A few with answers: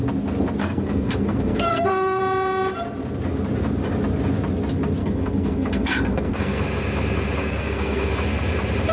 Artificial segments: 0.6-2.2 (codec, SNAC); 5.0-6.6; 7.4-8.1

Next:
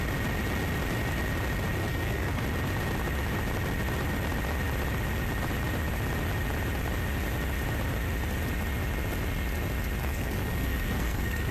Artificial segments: 1.9-2.4 (codec, SNAC); 10.0-11.5

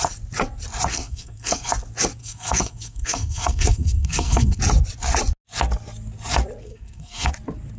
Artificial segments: 0.9-1.7 (codec, SNAC); 2.2-4.6; 6.6-7.3

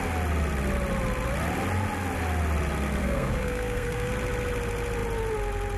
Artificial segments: 3.0-4.1 (codec, SNAC)